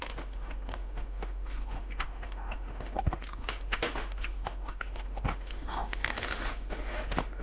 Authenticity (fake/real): fake